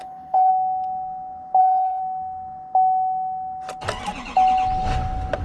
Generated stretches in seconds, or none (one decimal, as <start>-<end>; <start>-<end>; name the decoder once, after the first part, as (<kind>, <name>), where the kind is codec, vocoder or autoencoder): 0.0-0.5 (codec, HILCodec); 1.6-2.0